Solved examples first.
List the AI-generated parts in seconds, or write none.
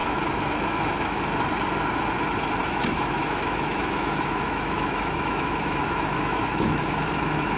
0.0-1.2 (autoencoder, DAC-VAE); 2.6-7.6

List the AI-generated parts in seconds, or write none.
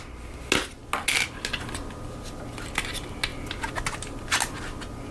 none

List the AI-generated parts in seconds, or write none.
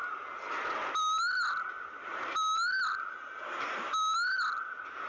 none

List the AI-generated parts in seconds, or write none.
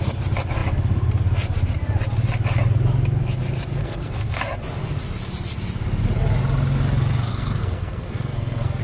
3.8-4.4 (codec, SNAC); 7.3-8.8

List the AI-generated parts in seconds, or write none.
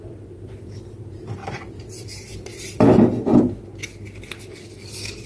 0.0-2.5 (vocoder, BigVGAN v2)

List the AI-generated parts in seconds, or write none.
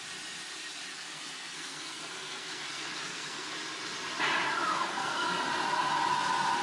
0.9-3.5 (codec, SNAC); 4.7-5.3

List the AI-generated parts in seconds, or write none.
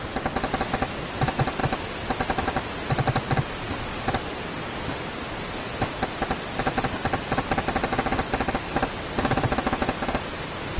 none